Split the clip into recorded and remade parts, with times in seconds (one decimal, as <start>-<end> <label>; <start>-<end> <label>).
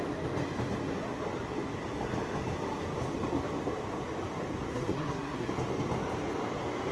0.0-4.7 recorded; 4.7-5.5 remade; 5.5-6.9 recorded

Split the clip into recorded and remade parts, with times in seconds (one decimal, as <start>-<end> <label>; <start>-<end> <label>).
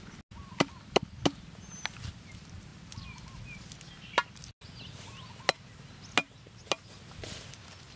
0.0-8.0 recorded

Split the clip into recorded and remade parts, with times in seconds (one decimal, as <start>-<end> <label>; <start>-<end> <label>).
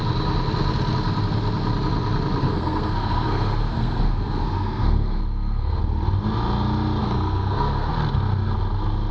0.0-2.4 recorded; 2.4-5.8 remade; 5.8-7.0 recorded; 7.0-7.9 remade; 7.9-9.1 recorded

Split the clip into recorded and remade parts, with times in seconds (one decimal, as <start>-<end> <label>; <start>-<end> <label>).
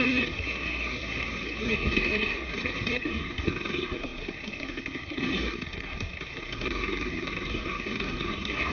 0.0-8.7 remade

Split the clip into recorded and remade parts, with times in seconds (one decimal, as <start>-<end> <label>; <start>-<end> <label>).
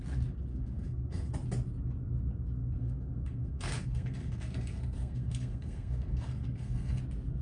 0.0-0.5 recorded; 0.5-1.3 remade; 1.3-2.6 recorded; 2.6-7.0 remade; 7.0-7.4 recorded